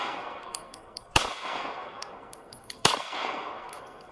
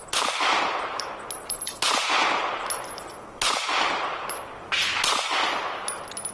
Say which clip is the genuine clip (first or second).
second